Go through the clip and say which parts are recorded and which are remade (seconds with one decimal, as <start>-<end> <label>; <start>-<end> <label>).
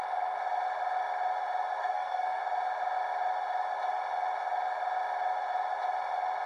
0.0-1.8 recorded; 1.8-2.4 remade; 2.4-6.5 recorded